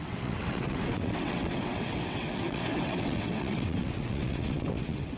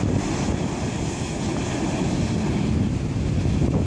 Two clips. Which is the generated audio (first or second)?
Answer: first